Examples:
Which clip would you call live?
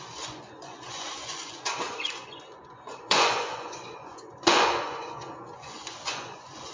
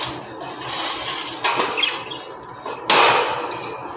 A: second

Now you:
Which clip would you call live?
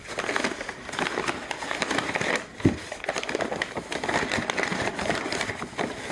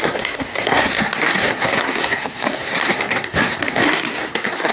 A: first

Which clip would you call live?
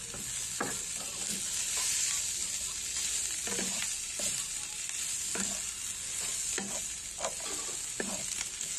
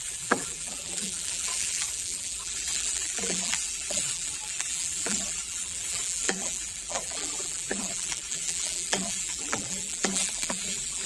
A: first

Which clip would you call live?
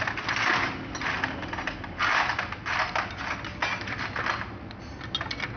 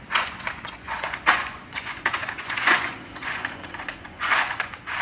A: first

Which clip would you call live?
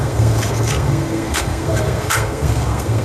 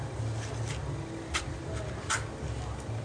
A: second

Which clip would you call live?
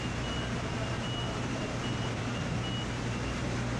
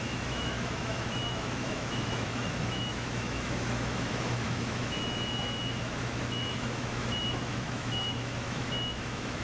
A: first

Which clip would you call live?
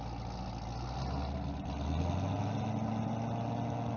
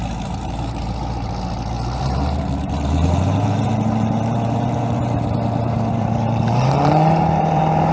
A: first